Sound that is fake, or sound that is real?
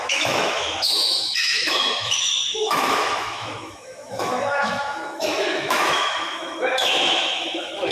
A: fake